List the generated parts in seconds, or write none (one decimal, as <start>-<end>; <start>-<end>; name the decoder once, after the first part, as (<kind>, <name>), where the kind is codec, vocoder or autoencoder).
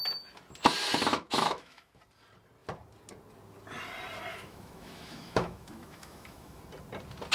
1.1-2.0 (autoencoder, DAC-VAE); 4.3-6.6